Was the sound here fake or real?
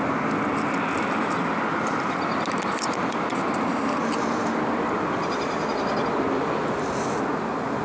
real